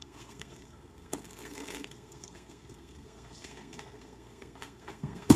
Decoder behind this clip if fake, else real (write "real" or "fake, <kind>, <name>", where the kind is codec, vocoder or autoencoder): fake, codec, SNAC